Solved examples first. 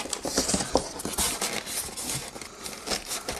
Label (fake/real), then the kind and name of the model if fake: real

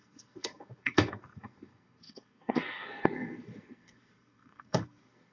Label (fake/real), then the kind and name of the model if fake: fake, codec, SNAC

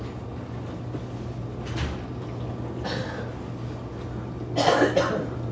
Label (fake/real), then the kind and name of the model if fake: real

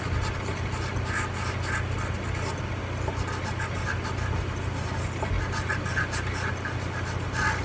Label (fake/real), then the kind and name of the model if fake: real